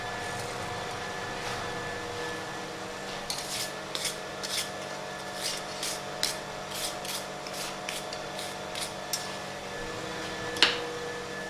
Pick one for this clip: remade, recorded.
recorded